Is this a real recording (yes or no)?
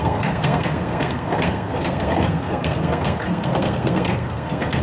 no